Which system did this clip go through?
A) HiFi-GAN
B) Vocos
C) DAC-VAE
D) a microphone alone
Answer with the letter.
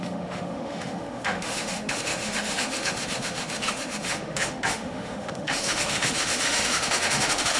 C